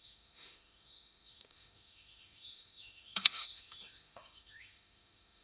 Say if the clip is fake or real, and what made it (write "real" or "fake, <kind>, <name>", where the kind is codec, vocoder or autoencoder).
fake, autoencoder, DAC-VAE